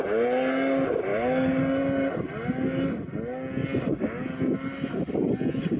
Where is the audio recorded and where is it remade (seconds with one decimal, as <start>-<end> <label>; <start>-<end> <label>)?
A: 0.0-5.8 recorded